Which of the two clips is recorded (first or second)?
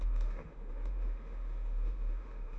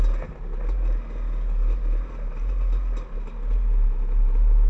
second